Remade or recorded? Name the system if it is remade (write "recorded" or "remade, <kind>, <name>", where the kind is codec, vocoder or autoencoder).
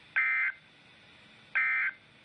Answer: recorded